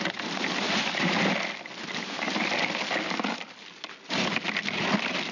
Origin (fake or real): real